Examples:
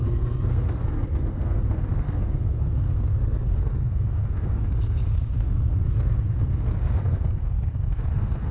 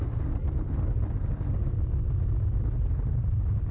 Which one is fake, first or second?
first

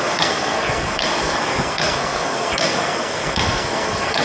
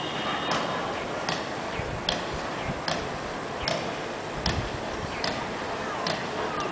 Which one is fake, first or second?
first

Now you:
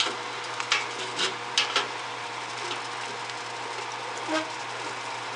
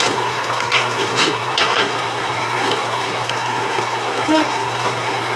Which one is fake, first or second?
second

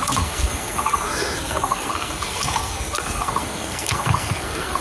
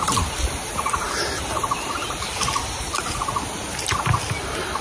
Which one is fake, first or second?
first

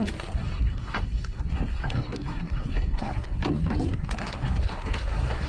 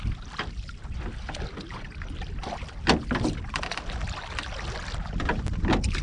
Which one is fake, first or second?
first